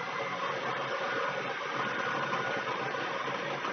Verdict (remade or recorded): remade